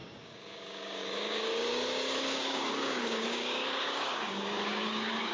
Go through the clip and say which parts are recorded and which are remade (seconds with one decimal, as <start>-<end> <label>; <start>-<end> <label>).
0.0-5.3 remade